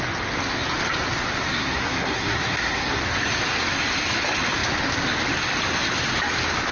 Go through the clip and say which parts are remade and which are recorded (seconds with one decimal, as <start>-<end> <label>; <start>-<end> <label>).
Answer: 0.0-1.5 recorded; 1.5-3.0 remade; 3.0-6.7 recorded